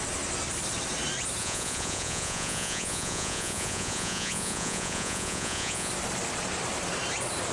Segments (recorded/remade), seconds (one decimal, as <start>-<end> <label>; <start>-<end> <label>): 0.0-1.4 recorded; 1.4-5.9 remade; 5.9-7.5 recorded